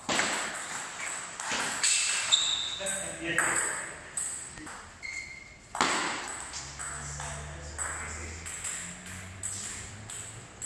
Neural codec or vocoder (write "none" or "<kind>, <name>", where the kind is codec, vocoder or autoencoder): none